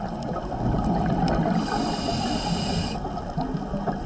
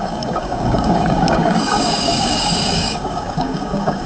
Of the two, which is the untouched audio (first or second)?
first